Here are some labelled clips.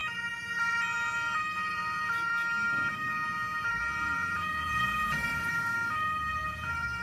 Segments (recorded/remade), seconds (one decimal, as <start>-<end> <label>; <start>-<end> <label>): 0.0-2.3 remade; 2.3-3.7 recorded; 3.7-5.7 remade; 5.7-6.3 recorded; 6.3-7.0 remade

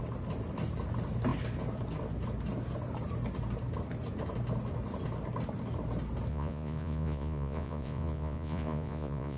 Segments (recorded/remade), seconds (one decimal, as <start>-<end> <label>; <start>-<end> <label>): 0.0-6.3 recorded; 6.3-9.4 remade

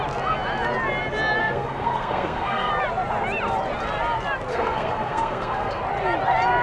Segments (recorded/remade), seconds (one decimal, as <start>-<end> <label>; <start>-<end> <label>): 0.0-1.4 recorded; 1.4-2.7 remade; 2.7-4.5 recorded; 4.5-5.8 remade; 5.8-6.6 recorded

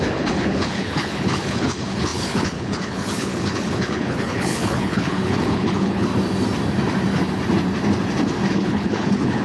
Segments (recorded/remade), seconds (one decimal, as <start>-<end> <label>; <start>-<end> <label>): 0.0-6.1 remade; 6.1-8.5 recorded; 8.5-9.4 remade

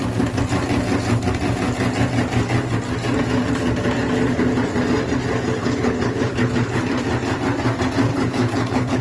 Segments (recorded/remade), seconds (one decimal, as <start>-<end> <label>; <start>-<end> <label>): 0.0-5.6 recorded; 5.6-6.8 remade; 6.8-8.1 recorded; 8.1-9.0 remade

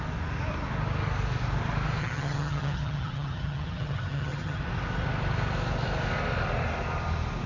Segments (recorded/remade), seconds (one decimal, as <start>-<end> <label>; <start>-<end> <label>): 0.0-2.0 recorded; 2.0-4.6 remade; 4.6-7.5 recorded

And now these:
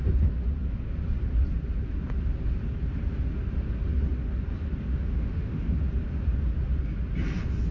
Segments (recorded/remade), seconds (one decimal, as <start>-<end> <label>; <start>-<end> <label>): 0.0-4.9 recorded; 4.9-5.8 remade; 5.8-7.7 recorded